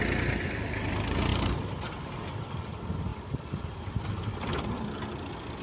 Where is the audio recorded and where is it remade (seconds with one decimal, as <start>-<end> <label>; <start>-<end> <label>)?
0.0-1.3 recorded; 1.3-2.1 remade; 2.1-3.1 recorded; 3.1-4.1 remade; 4.1-5.6 recorded